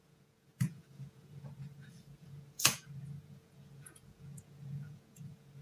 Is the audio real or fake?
fake